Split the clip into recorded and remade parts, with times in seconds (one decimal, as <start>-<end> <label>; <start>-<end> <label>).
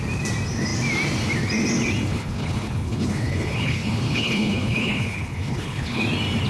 0.0-2.1 recorded; 2.1-6.0 remade; 6.0-6.5 recorded